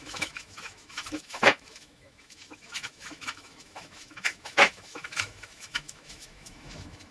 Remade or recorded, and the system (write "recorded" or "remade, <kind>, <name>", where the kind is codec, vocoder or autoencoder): remade, autoencoder, DAC-VAE